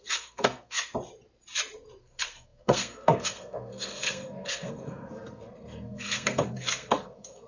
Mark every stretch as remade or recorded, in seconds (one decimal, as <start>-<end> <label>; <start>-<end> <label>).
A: 0.0-0.9 remade; 0.9-2.0 recorded; 2.0-7.5 remade